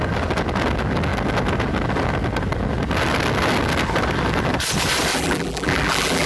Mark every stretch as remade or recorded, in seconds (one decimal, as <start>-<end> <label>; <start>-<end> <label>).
0.0-5.1 recorded; 5.1-6.3 remade